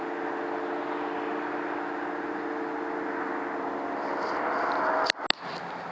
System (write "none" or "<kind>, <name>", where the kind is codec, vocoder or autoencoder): none